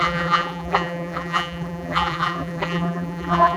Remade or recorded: remade